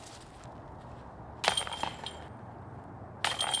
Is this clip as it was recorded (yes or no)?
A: yes